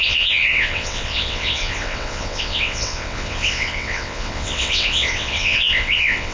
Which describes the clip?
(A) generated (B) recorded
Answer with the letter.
A